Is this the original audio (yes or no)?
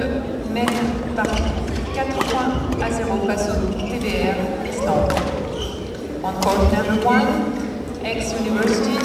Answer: yes